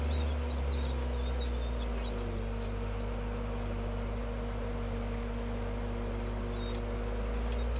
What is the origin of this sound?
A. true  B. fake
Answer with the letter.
A